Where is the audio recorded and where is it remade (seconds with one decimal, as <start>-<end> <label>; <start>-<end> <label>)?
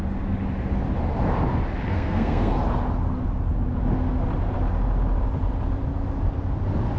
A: 0.0-1.9 recorded; 1.9-2.5 remade; 2.5-7.0 recorded